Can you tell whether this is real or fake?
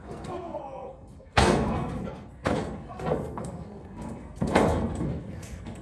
fake